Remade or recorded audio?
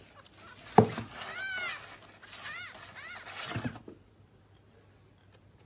recorded